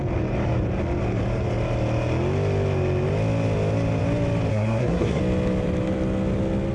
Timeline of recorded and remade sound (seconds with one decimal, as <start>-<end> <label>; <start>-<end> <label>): 0.0-4.5 recorded; 4.5-5.2 remade; 5.2-6.7 recorded